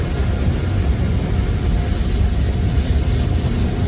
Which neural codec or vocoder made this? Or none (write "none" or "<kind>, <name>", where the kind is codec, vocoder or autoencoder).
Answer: none